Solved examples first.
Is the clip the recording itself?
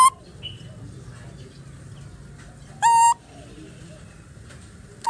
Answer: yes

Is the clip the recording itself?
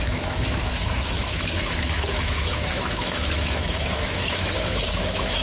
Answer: no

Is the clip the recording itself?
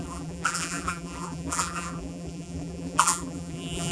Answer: no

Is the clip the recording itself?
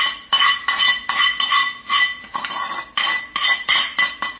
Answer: yes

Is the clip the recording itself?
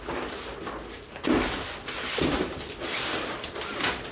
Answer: yes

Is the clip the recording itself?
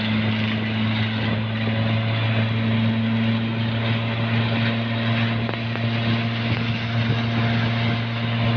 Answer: yes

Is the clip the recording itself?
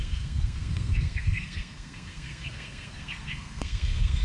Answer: no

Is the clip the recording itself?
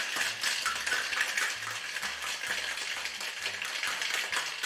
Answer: yes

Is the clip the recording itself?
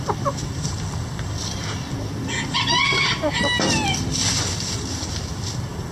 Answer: yes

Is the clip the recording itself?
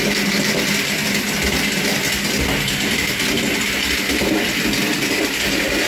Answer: yes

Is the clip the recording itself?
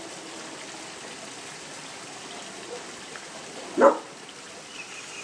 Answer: yes